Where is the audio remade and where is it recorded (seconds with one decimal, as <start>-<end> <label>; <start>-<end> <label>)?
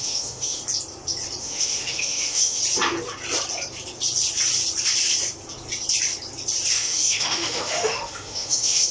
0.0-0.6 remade; 0.6-1.4 recorded; 1.4-2.6 remade; 2.6-6.7 recorded; 6.7-8.9 remade